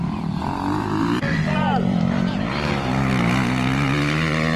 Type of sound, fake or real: real